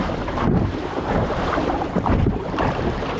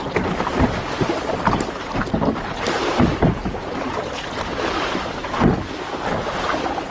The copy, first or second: first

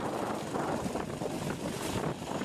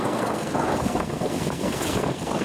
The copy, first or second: second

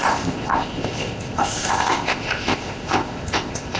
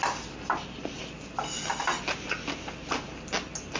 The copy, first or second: first